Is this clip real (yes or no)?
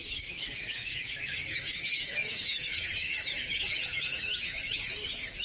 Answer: no